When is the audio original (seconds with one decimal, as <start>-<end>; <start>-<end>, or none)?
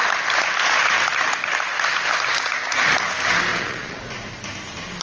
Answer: 0.0-3.5; 4.0-5.0